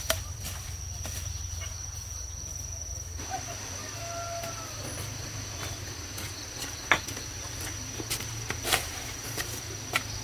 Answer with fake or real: real